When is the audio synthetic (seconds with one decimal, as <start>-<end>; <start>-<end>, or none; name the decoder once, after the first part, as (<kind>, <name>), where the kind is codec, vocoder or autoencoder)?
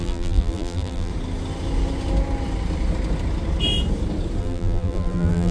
0.0-1.1 (vocoder, BigVGAN v2); 4.4-5.5